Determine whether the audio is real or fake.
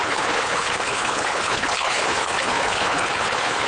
fake